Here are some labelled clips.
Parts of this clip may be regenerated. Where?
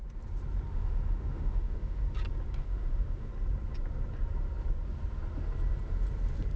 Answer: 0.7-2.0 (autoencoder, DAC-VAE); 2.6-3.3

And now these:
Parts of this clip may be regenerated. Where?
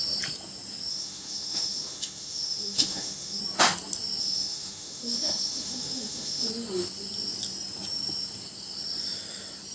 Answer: 0.9-3.4 (autoencoder, DAC-VAE); 4.2-6.5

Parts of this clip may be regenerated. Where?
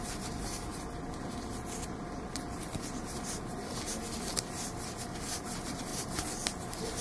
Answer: none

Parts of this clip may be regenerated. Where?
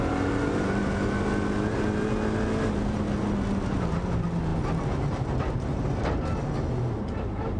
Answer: none